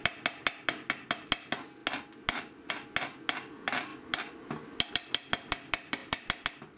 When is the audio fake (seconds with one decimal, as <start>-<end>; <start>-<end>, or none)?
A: none